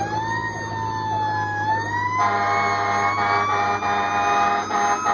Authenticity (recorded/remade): recorded